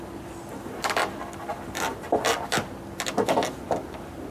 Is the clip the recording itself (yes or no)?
yes